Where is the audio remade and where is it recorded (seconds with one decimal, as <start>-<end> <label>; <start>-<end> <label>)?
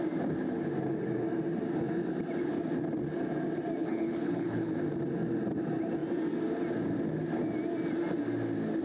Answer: 0.0-3.8 recorded; 3.8-4.7 remade; 4.7-8.8 recorded